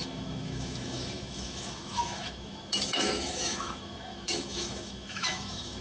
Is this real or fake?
fake